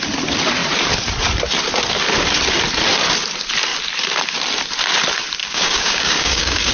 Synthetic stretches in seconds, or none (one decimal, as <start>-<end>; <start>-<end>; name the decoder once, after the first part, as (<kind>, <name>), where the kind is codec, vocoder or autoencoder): 5.4-6.7 (codec, DAC)